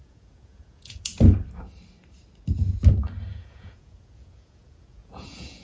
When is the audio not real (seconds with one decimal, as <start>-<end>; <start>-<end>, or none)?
0.0-1.1; 3.3-5.6